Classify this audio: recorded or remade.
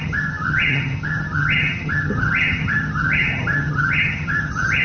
remade